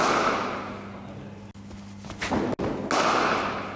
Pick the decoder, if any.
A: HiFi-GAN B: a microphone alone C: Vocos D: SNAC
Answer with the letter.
B